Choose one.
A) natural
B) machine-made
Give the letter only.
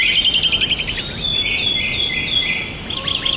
A